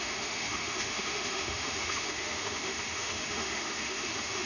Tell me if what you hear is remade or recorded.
remade